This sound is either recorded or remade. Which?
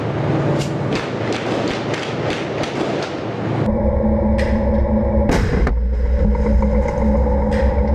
recorded